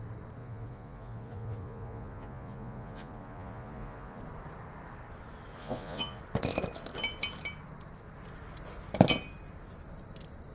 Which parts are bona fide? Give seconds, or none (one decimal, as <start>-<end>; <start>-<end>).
0.0-0.4; 4.2-5.6; 6.2-10.5